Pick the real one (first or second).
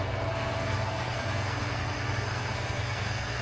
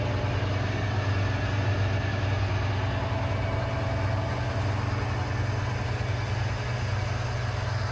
second